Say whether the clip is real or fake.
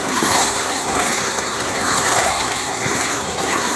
fake